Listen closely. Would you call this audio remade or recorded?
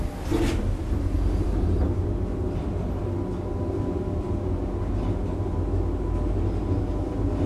recorded